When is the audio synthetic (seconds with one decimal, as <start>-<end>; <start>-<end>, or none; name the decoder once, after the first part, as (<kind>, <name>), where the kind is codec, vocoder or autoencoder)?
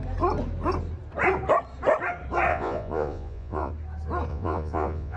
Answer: 2.5-3.7 (vocoder, Vocos); 4.3-5.2